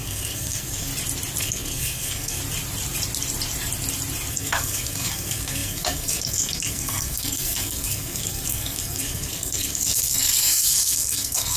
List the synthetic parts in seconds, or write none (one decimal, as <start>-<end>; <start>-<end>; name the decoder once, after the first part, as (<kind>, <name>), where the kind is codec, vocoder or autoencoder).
0.0-0.9 (codec, SNAC); 1.4-2.4; 4.3-11.6

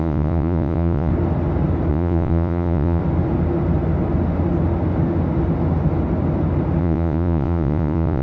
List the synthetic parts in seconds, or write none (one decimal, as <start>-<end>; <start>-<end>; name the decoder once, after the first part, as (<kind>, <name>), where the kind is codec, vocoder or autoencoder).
0.0-1.1 (vocoder, Vocos); 1.9-3.0; 6.8-8.2